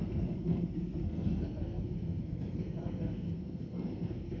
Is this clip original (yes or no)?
no